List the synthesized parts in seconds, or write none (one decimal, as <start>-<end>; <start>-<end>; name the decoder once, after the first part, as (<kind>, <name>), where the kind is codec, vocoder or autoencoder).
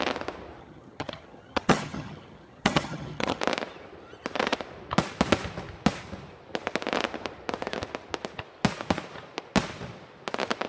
0.6-3.4 (vocoder, HiFi-GAN)